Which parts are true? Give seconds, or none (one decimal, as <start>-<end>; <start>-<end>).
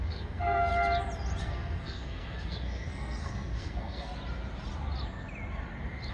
0.7-1.4; 4.1-6.1